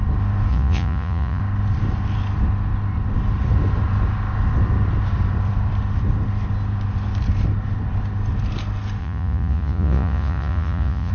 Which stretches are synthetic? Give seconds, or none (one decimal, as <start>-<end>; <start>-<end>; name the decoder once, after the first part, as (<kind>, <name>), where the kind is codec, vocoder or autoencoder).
0.5-1.4 (vocoder, Vocos); 9.0-11.1